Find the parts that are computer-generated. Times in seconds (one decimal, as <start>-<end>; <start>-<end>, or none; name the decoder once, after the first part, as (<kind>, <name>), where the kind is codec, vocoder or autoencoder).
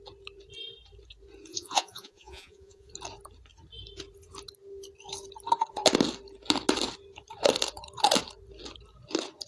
1.5-2.9 (vocoder, Vocos)